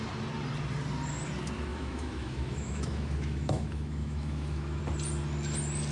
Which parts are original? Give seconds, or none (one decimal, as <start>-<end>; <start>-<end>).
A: 0.0-1.7; 4.8-5.9